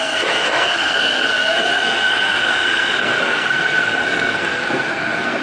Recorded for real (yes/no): no